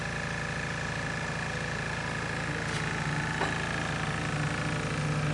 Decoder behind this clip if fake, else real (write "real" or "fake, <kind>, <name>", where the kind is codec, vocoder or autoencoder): real